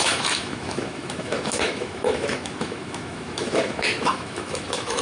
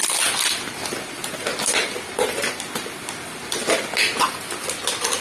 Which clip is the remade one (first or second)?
first